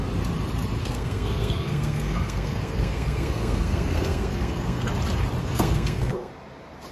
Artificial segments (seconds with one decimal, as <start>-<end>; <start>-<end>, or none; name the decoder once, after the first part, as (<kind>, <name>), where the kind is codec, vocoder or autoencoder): 0.8-4.9 (codec, SNAC); 5.4-6.3